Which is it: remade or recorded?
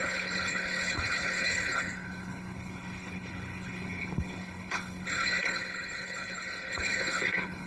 remade